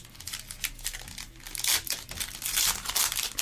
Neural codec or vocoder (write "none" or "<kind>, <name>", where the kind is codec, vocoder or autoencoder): none